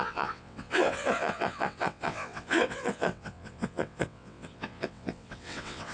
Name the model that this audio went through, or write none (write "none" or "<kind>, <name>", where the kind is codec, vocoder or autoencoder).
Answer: vocoder, WaveNeXt